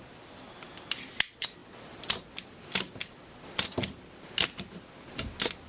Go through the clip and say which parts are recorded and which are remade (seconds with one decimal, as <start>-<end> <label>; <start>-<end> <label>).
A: 0.0-5.7 recorded